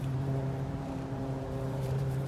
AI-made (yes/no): yes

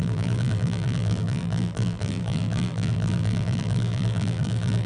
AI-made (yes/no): yes